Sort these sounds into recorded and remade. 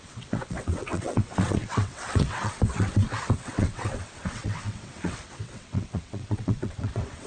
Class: remade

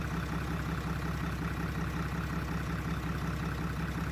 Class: recorded